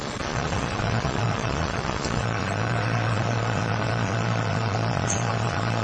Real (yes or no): no